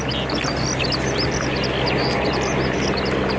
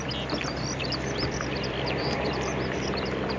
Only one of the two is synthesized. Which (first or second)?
second